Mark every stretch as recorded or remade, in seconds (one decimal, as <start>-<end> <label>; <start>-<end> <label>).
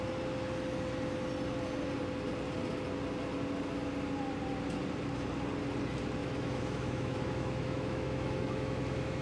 0.0-6.2 recorded; 6.2-9.2 remade